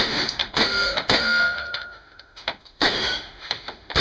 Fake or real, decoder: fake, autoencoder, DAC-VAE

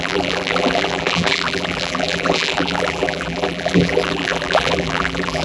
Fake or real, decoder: fake, vocoder, BigVGAN v2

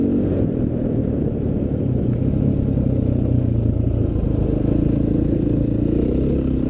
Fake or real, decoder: real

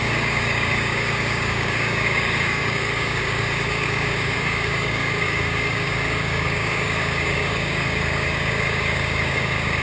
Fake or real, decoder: fake, codec, DAC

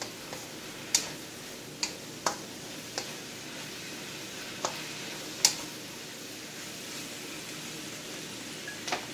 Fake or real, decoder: real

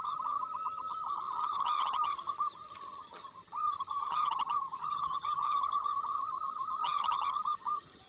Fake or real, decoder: fake, vocoder, HiFi-GAN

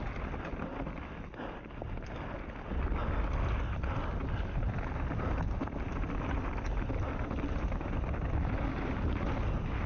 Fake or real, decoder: real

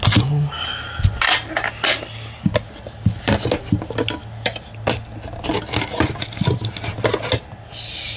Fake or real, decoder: real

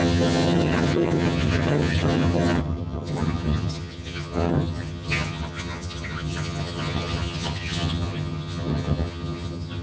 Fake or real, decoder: fake, vocoder, HiFi-GAN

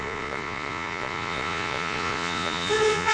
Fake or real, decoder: fake, vocoder, Vocos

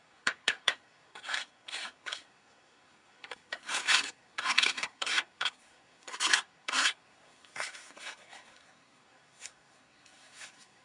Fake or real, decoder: fake, codec, SNAC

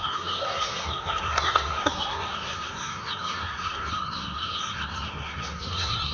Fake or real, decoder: fake, codec, SNAC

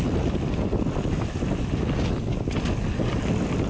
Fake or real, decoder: real